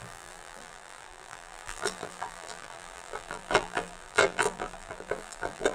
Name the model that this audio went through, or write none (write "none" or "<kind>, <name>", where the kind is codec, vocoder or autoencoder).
vocoder, BigVGAN v2